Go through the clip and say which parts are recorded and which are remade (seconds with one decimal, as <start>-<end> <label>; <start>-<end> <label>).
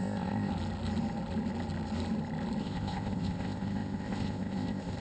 0.0-0.5 remade; 0.5-2.6 recorded; 2.6-5.0 remade